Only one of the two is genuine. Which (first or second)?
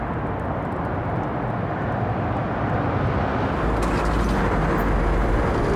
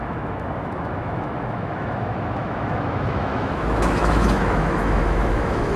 first